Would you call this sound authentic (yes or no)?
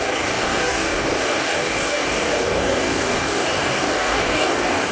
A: no